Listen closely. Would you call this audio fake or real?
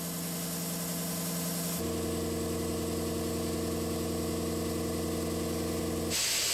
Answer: real